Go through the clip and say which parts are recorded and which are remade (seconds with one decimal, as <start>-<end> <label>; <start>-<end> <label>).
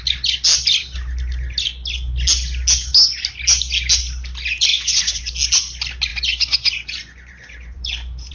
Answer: 0.0-4.7 recorded; 4.7-5.3 remade; 5.3-6.1 recorded; 6.1-8.3 remade